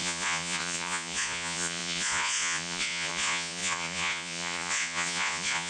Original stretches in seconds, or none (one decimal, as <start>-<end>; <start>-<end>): none